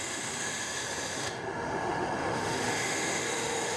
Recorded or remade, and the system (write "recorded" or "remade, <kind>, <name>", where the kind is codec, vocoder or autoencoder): remade, autoencoder, DAC-VAE